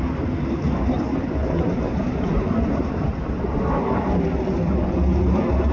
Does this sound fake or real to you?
real